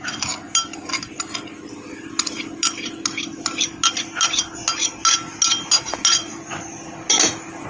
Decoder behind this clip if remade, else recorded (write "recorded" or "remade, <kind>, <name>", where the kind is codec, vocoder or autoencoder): recorded